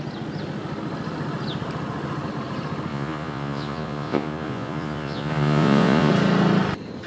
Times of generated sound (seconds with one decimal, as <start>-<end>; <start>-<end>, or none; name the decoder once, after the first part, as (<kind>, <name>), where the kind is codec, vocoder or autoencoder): 2.9-6.1 (vocoder, Vocos)